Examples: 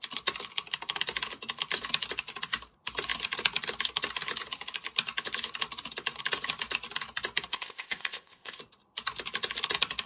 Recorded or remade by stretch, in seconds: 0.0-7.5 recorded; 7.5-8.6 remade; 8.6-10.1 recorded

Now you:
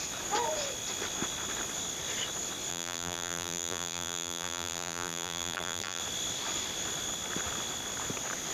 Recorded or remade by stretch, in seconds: 0.0-2.7 recorded; 2.7-6.0 remade; 6.0-8.5 recorded

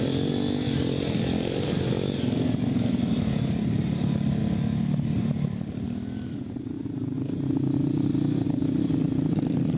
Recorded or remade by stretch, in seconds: 0.0-9.8 recorded

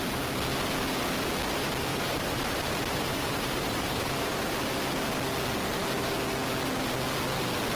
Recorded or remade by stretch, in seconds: 0.0-1.9 recorded; 1.9-4.4 remade; 4.4-7.7 recorded

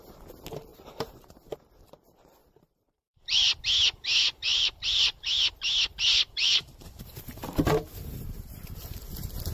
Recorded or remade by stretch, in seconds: 0.0-0.7 recorded; 0.7-1.6 remade; 1.6-2.4 recorded; 2.4-3.6 remade; 3.6-4.5 recorded; 4.5-5.5 remade; 5.5-6.1 recorded; 6.1-7.2 remade; 7.2-9.5 recorded

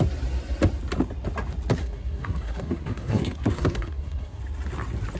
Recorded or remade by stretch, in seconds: 0.0-1.8 recorded; 1.8-4.4 remade; 4.4-5.2 recorded